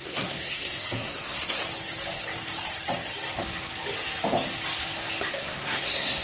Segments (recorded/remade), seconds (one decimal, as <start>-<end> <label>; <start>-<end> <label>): 0.0-1.6 remade; 1.6-5.3 recorded; 5.3-6.2 remade